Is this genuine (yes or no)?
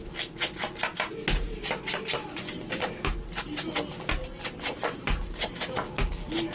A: yes